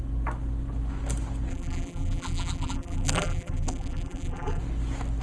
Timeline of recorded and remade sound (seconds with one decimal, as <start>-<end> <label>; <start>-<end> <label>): 0.0-1.5 recorded; 1.5-4.6 remade; 4.6-5.2 recorded